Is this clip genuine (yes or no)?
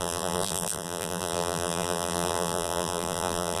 no